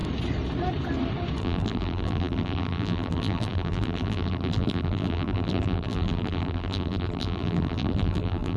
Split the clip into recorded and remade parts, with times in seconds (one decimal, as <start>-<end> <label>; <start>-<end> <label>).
0.0-1.4 recorded; 1.4-8.6 remade